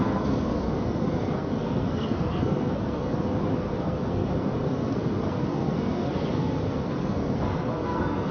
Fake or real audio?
fake